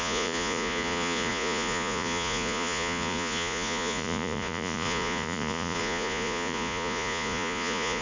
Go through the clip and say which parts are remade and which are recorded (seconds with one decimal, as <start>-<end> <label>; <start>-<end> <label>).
0.0-8.0 remade